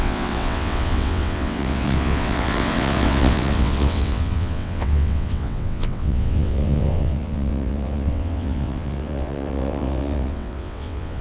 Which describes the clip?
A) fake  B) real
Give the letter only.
A